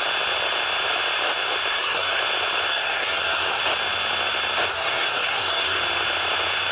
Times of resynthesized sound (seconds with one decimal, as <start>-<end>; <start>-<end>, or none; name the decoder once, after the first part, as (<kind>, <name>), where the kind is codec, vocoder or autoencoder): 1.7-2.2 (codec, SNAC); 2.7-3.6; 4.7-5.8